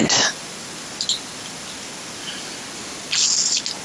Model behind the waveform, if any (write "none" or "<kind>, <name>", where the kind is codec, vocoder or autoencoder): none